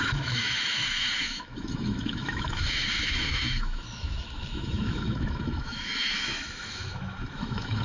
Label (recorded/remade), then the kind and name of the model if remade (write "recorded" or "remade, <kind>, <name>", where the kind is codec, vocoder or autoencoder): remade, autoencoder, DAC-VAE